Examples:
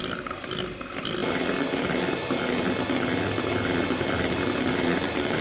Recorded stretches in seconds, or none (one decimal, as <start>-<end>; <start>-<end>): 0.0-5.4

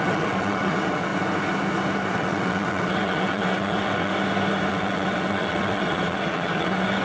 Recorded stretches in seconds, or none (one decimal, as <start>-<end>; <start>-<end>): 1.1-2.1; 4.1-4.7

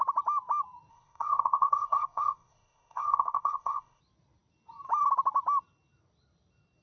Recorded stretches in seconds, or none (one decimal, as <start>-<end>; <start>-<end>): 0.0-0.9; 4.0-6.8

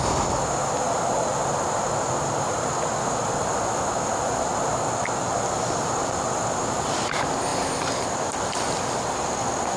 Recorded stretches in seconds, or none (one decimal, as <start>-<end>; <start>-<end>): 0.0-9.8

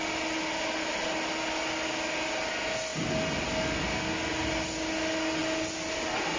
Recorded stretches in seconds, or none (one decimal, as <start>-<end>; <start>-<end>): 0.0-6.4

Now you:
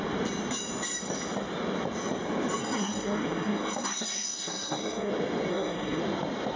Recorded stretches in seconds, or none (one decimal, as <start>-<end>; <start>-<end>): 0.0-2.6; 5.1-5.5; 6.0-6.6

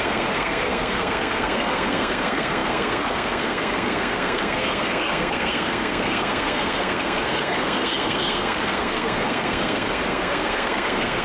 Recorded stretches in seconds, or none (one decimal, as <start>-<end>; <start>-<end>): none

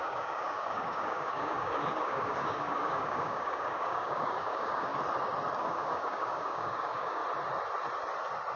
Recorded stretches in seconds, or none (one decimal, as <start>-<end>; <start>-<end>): 4.9-5.6; 7.2-8.6